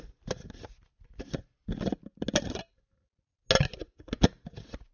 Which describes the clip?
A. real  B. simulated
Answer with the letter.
A